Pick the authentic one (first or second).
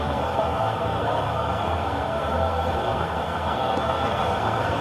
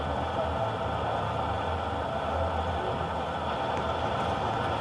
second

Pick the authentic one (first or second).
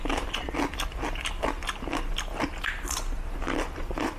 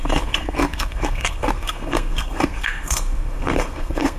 first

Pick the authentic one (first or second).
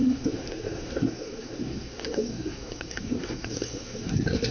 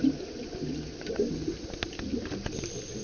second